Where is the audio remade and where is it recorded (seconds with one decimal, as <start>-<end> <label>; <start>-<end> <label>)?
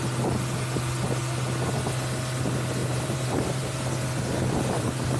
0.0-2.8 recorded; 2.8-3.8 remade; 3.8-5.2 recorded